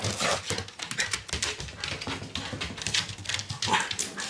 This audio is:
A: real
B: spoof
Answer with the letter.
A